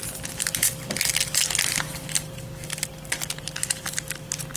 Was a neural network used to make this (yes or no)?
no